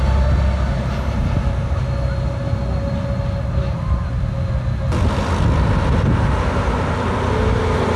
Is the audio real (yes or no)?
yes